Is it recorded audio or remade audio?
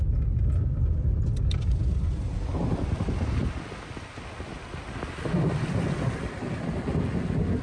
recorded